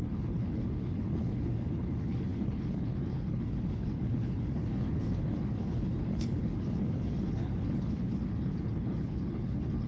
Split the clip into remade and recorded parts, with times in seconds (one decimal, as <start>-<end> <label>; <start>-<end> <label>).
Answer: 0.0-9.9 remade